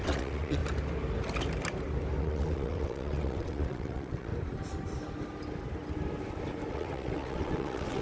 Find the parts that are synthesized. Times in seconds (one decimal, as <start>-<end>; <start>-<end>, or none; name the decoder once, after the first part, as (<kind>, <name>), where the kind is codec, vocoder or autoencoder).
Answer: 0.0-0.6 (vocoder, WaveNeXt); 2.2-4.3; 6.7-8.0